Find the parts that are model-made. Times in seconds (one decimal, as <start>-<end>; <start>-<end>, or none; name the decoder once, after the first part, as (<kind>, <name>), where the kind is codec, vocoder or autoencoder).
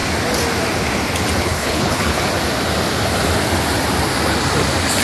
1.4-2.2 (codec, HILCodec)